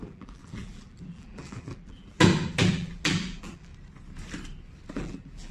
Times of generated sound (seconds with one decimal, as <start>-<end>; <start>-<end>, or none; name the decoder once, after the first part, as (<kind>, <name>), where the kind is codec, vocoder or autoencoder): 0.0-3.7 (vocoder, BigVGAN v2); 4.9-5.5